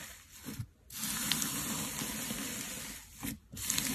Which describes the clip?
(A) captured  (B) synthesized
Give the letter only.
A